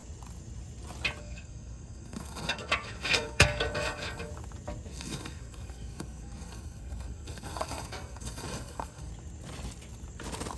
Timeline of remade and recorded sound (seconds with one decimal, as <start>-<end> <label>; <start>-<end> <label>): 0.0-1.2 recorded; 1.2-4.3 remade; 4.3-4.9 recorded; 4.9-9.1 remade; 9.1-10.6 recorded